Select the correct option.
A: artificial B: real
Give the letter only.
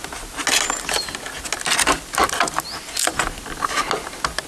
B